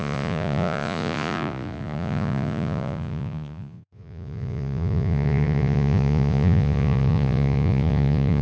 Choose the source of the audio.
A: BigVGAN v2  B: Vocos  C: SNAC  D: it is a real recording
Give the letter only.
B